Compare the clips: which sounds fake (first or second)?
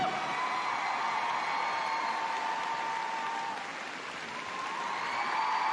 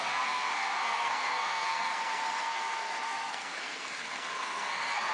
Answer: second